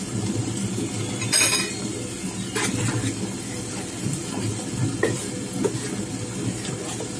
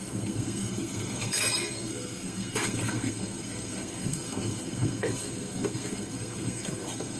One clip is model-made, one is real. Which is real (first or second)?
first